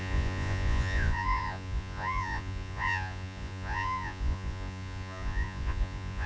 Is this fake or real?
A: fake